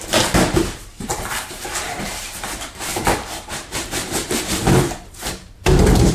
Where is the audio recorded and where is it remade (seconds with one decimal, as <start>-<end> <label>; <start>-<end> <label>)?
0.0-4.2 remade; 4.2-5.0 recorded; 5.0-6.1 remade